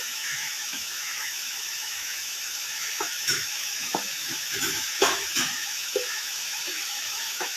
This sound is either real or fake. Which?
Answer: fake